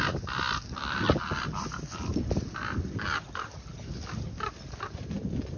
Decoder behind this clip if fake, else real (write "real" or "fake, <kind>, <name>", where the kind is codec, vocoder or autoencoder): real